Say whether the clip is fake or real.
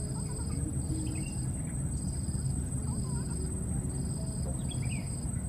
real